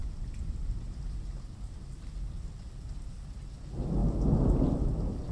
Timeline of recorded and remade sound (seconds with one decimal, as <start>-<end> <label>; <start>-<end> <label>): 0.0-5.3 recorded